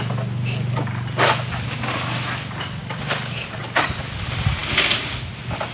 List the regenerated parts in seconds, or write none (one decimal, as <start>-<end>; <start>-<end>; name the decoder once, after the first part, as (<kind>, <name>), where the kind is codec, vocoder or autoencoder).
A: none

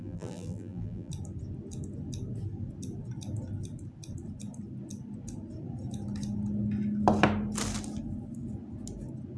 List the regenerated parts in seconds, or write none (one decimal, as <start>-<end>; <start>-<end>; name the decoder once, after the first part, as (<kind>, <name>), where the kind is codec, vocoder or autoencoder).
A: 0.0-1.1 (vocoder, BigVGAN v2)

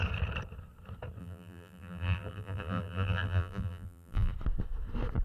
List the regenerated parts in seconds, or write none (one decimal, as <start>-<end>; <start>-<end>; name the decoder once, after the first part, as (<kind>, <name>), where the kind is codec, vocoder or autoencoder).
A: 1.2-4.3 (vocoder, BigVGAN v2)

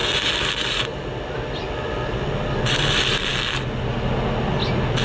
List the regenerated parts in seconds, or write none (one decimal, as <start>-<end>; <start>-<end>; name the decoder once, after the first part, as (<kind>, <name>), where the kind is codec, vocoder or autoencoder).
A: none